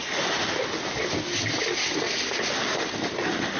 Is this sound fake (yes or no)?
no